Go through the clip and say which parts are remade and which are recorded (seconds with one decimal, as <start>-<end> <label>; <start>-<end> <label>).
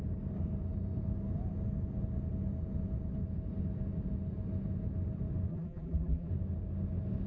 0.0-5.5 recorded; 5.5-6.3 remade; 6.3-7.3 recorded